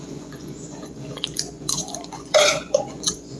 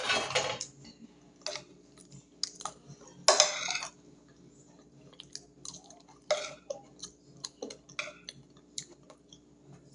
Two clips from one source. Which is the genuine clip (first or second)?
second